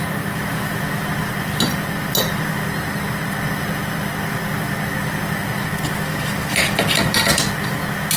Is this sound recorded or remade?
recorded